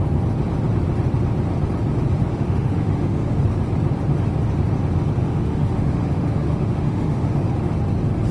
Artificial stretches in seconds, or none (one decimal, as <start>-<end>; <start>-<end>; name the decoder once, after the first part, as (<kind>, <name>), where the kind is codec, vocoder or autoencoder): 2.3-3.4 (autoencoder, DAC-VAE); 5.2-7.5